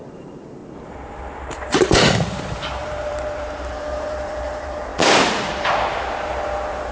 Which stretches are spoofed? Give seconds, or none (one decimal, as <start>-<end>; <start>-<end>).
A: 0.0-0.6; 1.6-4.9; 5.6-6.9